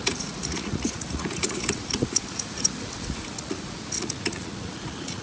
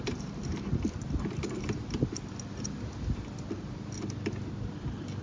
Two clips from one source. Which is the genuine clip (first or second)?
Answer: second